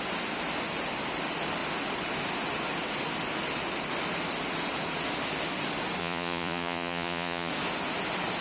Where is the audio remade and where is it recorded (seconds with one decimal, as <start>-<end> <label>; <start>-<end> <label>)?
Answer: 0.0-6.0 recorded; 6.0-7.5 remade; 7.5-8.4 recorded